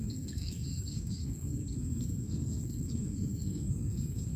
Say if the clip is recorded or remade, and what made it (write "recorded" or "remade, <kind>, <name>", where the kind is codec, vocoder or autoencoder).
remade, codec, SNAC